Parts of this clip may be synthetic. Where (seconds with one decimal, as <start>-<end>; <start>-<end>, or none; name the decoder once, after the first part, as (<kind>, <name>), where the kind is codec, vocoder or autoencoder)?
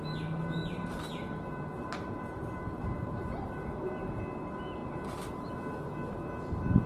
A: 0.6-3.9 (vocoder, BigVGAN v2)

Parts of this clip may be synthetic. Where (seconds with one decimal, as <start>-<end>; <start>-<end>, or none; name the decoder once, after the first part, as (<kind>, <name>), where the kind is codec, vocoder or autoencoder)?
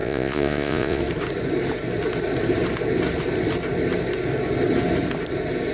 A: 0.0-1.0 (vocoder, Vocos)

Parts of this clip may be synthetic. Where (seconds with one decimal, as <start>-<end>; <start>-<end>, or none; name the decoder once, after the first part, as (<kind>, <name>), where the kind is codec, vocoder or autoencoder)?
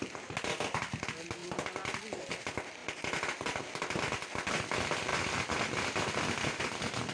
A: none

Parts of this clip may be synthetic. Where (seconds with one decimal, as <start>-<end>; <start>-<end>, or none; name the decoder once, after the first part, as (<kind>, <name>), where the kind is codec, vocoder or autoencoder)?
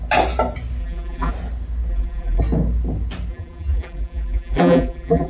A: 0.8-1.3 (vocoder, BigVGAN v2); 1.9-2.4; 3.3-5.3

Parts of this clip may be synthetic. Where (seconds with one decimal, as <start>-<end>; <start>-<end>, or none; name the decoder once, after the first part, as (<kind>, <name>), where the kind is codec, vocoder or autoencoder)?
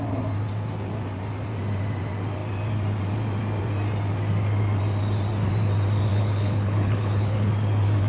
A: 6.1-7.5 (codec, HILCodec)